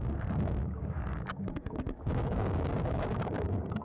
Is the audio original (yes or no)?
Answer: no